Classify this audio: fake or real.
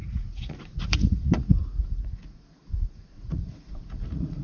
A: fake